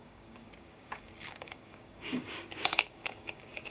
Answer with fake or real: fake